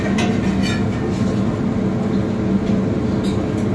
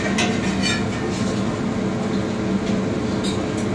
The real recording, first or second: second